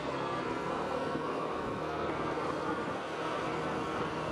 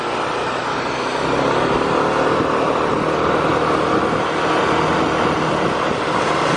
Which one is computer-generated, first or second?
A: first